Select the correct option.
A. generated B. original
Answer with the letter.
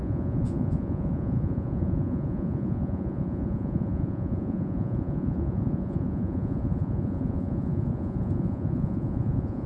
A